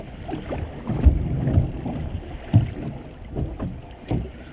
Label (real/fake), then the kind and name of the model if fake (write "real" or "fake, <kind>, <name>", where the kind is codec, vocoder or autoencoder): real